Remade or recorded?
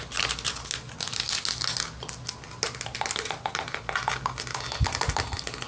recorded